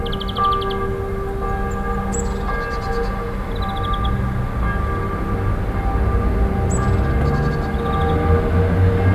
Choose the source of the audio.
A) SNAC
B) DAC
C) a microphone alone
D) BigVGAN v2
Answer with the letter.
C